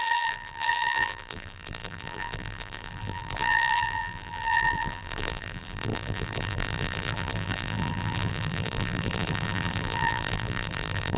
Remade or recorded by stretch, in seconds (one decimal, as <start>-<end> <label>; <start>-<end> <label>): 0.0-11.2 remade